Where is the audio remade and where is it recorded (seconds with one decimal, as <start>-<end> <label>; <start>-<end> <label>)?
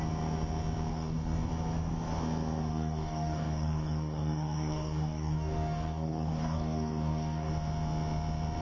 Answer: 0.0-0.9 recorded; 0.9-1.5 remade; 1.5-2.7 recorded; 2.7-7.5 remade; 7.5-8.6 recorded